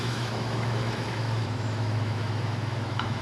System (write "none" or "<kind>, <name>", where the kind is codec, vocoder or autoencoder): autoencoder, DAC-VAE